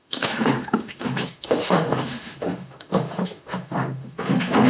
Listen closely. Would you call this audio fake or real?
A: fake